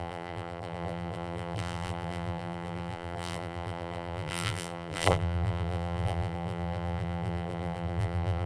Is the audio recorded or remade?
remade